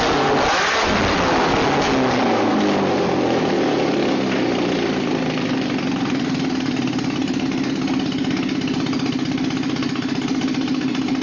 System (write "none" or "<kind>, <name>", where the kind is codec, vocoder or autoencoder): none